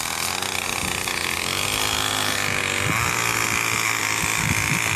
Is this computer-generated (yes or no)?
no